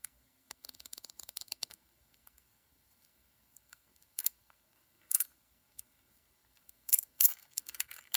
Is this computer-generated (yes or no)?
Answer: yes